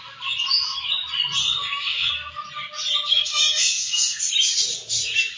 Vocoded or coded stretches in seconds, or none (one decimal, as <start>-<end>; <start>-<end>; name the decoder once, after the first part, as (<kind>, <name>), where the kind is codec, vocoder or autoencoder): 1.4-2.1 (autoencoder, DAC-VAE); 3.1-4.2

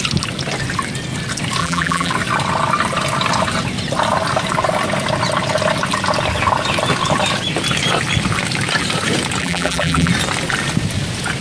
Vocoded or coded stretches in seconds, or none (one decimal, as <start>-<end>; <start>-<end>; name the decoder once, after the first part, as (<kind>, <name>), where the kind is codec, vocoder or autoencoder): 1.6-2.1 (vocoder, BigVGAN v2); 9.4-10.1